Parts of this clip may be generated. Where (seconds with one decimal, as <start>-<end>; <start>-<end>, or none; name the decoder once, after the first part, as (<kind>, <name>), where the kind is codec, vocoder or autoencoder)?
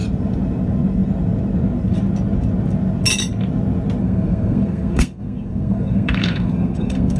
4.0-7.2 (codec, SNAC)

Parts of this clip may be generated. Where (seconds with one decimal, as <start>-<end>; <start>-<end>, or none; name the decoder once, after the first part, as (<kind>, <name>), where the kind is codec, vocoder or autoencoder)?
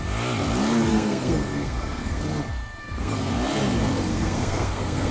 0.9-2.2 (codec, SNAC); 2.8-3.3; 4.1-5.1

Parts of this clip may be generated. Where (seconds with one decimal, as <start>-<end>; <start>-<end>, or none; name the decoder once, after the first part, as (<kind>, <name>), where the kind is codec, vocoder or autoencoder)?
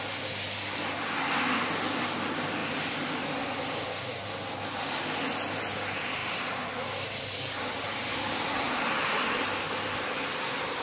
none